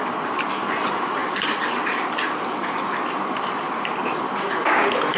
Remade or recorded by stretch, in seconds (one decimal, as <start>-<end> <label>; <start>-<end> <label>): 0.0-5.2 recorded